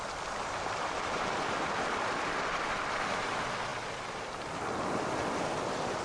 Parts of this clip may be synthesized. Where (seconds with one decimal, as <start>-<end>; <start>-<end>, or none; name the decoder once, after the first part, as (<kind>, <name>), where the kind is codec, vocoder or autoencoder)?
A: 0.0-6.0 (vocoder, BigVGAN v2)